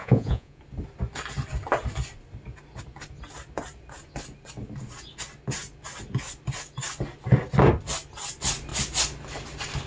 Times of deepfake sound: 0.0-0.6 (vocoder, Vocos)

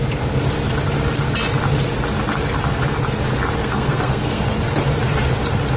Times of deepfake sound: 3.6-4.4 (codec, SNAC)

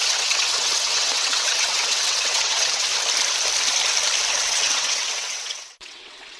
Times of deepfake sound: 0.0-2.9 (vocoder, WaveNeXt); 4.4-6.4

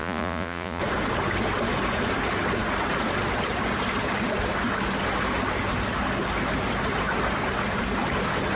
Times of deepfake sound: 0.0-0.8 (vocoder, Vocos)